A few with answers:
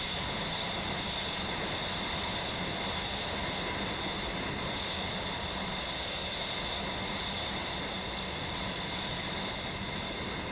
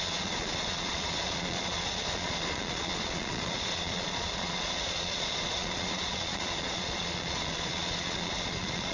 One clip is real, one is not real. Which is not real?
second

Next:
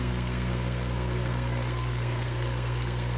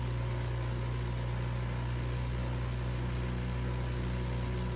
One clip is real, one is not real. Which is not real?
first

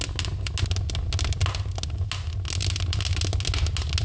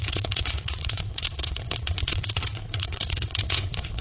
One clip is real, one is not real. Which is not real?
second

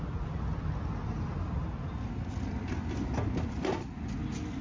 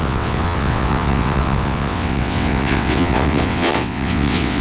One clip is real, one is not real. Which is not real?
second